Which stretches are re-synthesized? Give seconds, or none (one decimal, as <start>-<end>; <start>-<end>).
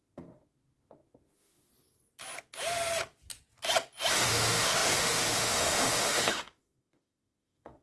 0.0-1.7; 4.1-7.8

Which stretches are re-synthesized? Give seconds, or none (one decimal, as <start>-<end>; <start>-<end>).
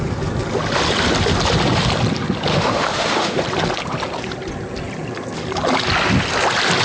2.5-3.4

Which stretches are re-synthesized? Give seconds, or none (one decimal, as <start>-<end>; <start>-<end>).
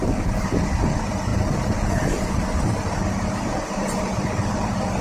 none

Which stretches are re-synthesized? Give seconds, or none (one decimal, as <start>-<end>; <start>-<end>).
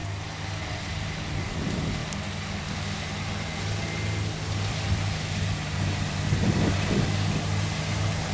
none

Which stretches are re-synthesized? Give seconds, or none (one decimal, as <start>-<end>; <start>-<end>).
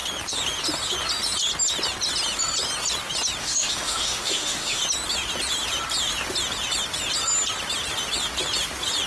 3.4-4.8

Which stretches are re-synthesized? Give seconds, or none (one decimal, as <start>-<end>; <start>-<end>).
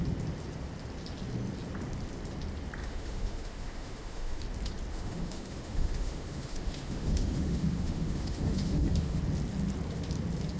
2.8-4.4; 4.9-9.2